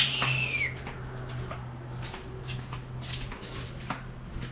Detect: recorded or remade recorded